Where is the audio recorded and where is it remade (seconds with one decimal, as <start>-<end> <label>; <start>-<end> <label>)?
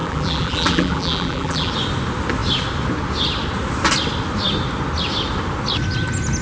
0.0-1.7 remade; 1.7-6.4 recorded